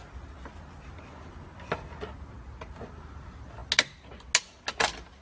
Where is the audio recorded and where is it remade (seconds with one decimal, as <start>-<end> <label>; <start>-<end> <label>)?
0.0-5.2 recorded